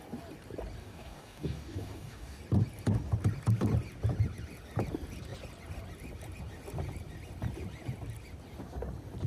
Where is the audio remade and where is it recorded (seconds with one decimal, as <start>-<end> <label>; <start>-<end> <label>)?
0.0-0.8 recorded; 0.8-2.4 remade; 2.4-9.3 recorded